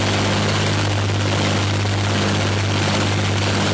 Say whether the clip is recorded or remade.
recorded